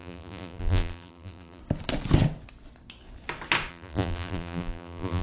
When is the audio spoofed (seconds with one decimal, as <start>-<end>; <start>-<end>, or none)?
0.0-1.6; 3.7-5.2